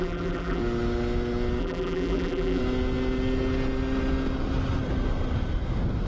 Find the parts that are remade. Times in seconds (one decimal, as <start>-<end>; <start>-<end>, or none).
0.0-0.6; 1.6-2.6